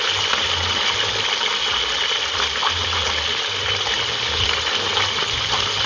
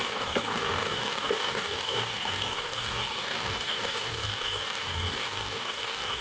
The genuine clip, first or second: first